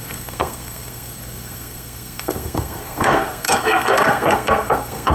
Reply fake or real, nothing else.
fake